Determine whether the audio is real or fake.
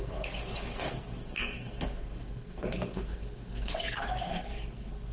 fake